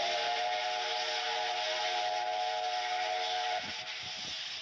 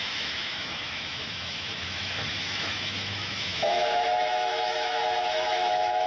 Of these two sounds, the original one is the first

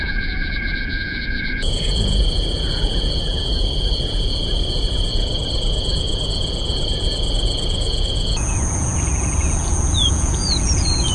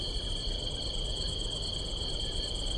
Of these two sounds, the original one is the second